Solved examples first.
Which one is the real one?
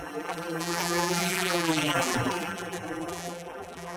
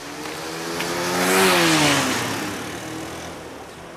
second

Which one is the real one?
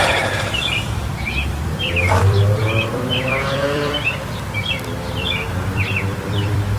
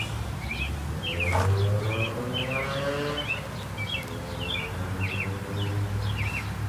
second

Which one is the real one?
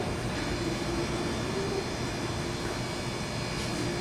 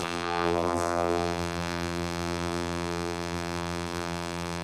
first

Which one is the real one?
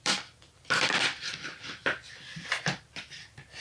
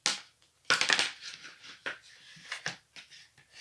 second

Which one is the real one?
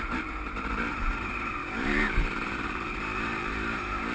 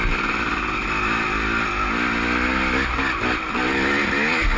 second